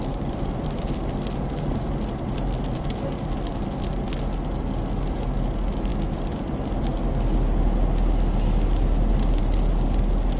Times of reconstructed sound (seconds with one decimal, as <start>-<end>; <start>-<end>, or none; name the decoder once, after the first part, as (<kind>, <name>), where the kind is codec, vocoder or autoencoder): none